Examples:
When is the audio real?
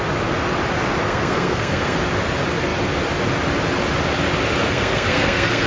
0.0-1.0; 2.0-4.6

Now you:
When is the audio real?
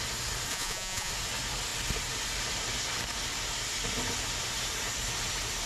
0.0-0.5; 1.1-5.7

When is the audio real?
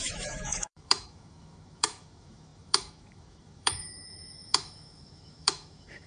none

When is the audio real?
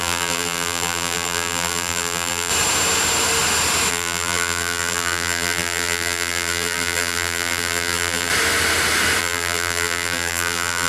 2.5-3.9; 8.3-9.2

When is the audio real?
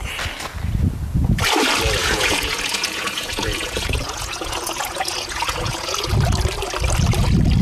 0.0-2.0; 6.1-7.6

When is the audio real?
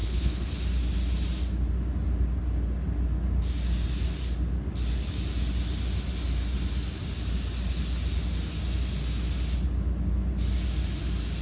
0.5-11.4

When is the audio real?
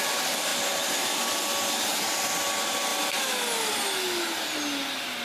0.0-5.2